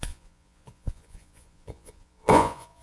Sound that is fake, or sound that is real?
fake